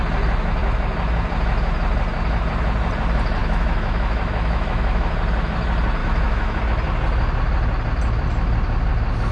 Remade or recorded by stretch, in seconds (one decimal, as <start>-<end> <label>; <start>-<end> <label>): 0.0-3.4 recorded; 3.4-5.1 remade; 5.1-6.0 recorded; 6.0-6.6 remade; 6.6-9.3 recorded